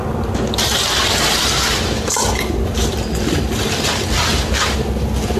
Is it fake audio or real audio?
fake